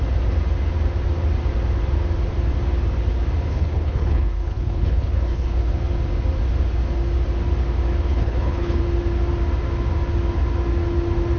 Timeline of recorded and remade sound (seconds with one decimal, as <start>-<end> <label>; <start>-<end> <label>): 0.0-3.5 recorded; 3.5-5.7 remade; 5.7-8.1 recorded; 8.1-8.8 remade; 8.8-11.4 recorded